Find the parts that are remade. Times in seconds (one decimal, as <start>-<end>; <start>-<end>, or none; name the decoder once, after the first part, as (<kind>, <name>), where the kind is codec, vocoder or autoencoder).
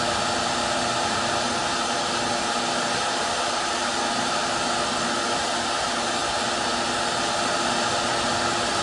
6.2-7.0 (vocoder, BigVGAN v2)